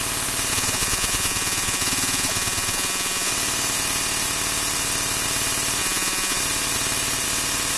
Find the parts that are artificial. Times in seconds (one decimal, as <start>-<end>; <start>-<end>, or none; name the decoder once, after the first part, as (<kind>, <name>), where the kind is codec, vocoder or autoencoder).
0.5-3.3 (vocoder, Vocos); 5.8-6.4